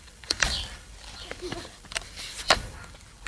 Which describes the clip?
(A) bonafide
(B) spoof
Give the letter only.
B